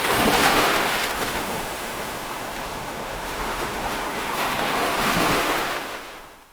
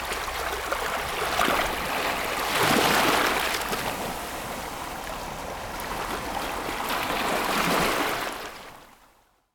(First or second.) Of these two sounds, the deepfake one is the first